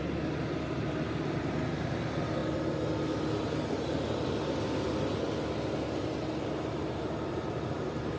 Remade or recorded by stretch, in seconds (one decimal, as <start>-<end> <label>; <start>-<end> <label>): 0.0-8.2 recorded